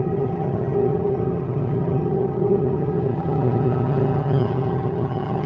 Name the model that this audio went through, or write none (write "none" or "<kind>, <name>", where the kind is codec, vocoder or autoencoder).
vocoder, HiFi-GAN